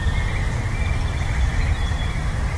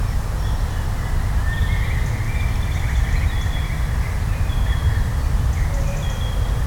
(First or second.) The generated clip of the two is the first